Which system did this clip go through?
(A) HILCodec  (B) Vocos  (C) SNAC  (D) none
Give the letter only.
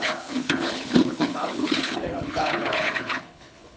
A